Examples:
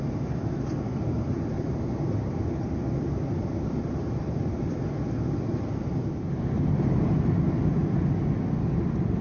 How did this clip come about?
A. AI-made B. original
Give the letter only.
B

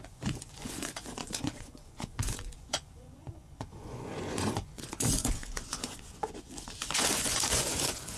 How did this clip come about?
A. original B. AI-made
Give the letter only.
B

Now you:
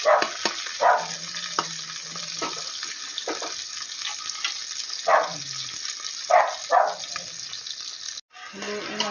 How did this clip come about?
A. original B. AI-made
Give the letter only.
A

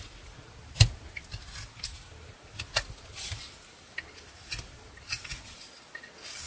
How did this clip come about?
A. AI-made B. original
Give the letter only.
B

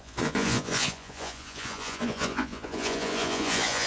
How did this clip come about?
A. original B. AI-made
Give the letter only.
B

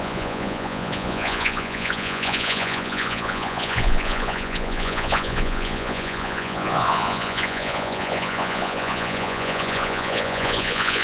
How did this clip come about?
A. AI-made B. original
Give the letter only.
A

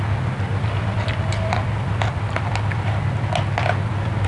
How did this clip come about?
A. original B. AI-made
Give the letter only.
A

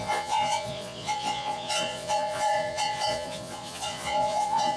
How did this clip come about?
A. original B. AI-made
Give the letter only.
B